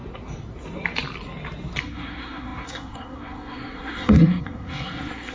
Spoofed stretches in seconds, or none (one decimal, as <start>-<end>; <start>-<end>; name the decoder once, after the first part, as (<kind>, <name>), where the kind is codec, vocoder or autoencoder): 1.8-5.3 (codec, SNAC)